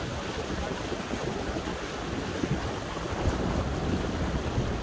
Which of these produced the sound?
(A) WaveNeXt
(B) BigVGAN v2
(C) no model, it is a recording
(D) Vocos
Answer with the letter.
C